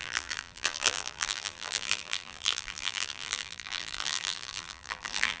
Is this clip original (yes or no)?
no